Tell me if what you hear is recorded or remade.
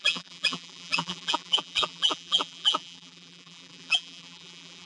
remade